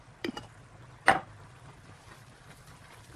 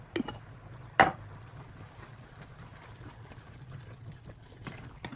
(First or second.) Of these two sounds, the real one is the second